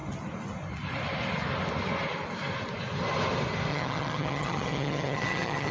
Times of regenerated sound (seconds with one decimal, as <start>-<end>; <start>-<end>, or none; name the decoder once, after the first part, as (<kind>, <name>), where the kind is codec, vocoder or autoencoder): 3.7-5.7 (vocoder, HiFi-GAN)